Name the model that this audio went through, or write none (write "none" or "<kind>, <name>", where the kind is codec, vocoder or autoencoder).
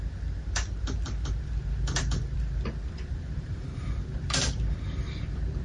vocoder, BigVGAN v2